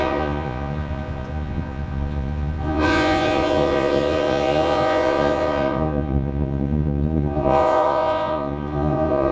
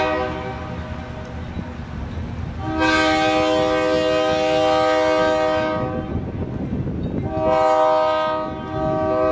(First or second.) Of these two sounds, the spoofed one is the first